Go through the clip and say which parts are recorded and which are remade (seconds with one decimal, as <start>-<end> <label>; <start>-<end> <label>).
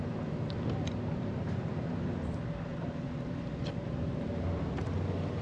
0.0-2.7 recorded; 2.7-3.5 remade; 3.5-5.4 recorded